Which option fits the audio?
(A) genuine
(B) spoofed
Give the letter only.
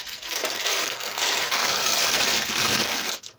B